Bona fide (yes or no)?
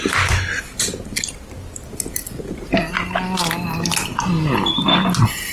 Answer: yes